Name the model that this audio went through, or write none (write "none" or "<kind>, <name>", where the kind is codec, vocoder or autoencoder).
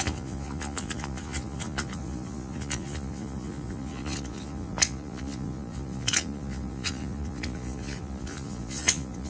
vocoder, Vocos